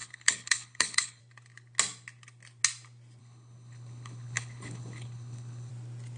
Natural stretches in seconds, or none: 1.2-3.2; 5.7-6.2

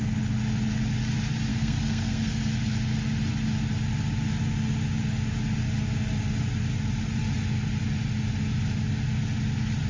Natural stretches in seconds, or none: 0.0-1.5; 2.4-9.9

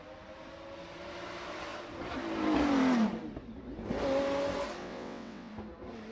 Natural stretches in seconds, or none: 0.0-4.8; 5.5-6.1

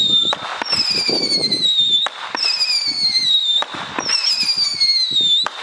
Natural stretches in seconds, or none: 0.0-5.6

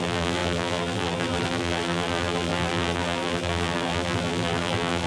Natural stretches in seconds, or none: none

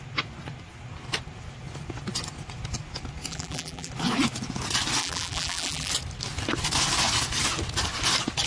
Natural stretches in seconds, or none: 0.0-3.3; 3.9-5.0; 5.9-8.5